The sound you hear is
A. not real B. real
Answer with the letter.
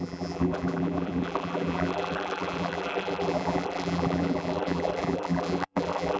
A